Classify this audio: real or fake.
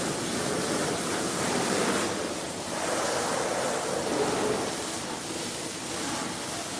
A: real